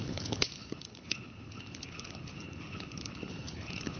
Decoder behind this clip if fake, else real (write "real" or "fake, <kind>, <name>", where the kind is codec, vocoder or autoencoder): fake, codec, HILCodec